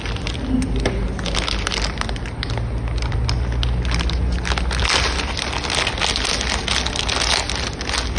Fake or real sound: real